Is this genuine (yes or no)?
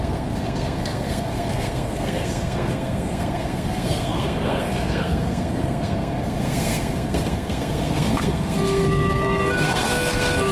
no